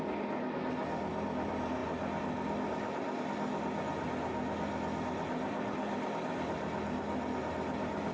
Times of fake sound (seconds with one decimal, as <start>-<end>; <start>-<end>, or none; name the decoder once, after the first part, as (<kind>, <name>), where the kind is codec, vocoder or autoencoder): none